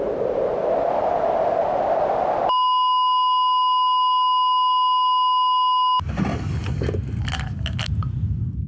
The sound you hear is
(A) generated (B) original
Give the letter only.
B